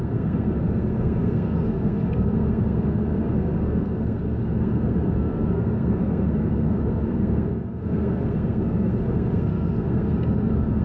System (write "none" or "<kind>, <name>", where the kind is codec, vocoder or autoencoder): codec, SNAC